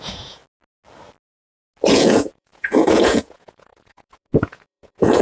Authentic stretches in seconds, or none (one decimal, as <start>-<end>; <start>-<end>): 0.4-1.9